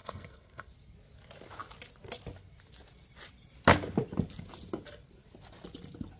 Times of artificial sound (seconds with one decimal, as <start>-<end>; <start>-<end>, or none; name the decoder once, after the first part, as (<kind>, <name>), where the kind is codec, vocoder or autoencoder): 0.0-0.7 (codec, SNAC)